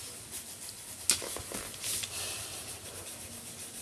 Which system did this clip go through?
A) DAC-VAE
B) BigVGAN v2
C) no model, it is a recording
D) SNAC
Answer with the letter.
C